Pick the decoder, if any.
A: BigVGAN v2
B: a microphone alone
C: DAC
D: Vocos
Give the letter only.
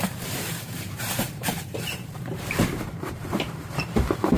A